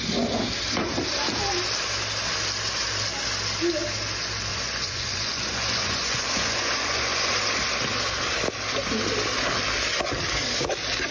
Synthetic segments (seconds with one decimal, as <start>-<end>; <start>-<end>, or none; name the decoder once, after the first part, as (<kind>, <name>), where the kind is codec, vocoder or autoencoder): 4.5-7.3 (vocoder, Vocos)